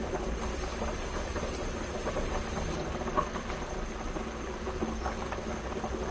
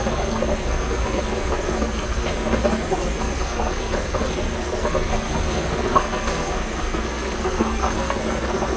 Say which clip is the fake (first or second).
second